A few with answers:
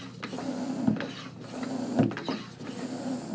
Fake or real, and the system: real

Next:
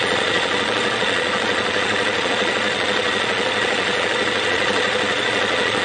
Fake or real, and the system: fake, vocoder, Vocos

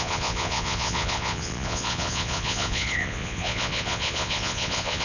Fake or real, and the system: fake, vocoder, Vocos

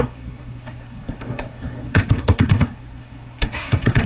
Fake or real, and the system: fake, codec, SNAC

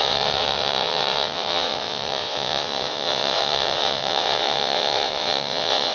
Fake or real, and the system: fake, vocoder, WaveNeXt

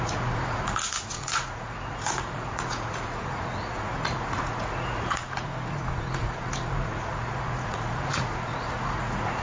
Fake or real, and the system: fake, vocoder, Vocos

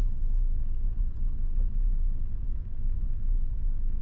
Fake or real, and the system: fake, vocoder, Vocos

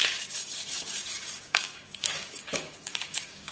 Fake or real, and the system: fake, codec, DAC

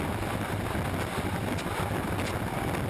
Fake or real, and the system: real